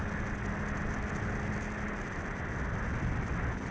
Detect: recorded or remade recorded